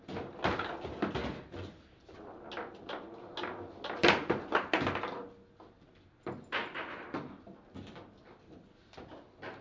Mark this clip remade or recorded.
recorded